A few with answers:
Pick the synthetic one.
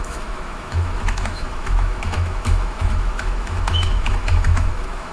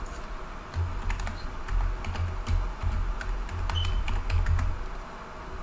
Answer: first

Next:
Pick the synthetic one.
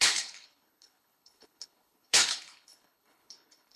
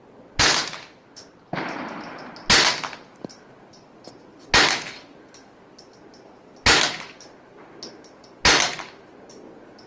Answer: first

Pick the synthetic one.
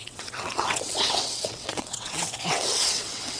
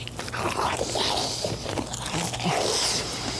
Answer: first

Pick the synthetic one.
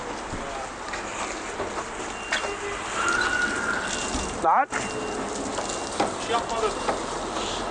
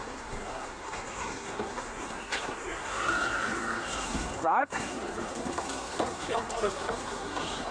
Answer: second